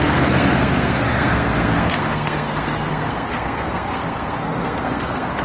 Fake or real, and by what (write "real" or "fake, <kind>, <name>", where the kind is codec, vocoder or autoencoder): fake, codec, SNAC